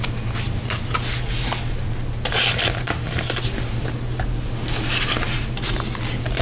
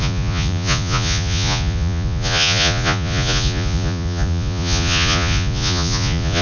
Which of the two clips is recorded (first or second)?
first